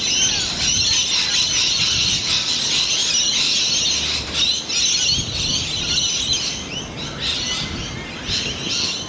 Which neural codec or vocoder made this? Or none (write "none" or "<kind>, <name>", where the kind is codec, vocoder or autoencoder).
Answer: none